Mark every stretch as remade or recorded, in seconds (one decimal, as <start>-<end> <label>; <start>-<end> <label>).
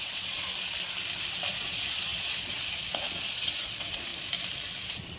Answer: 0.0-0.5 remade; 0.5-1.5 recorded; 1.5-4.1 remade; 4.1-4.8 recorded; 4.8-5.2 remade